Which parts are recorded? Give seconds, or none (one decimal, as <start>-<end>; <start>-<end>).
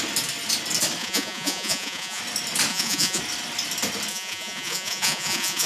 0.0-1.0; 2.2-2.7; 3.2-4.1